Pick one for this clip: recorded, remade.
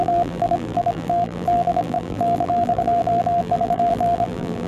remade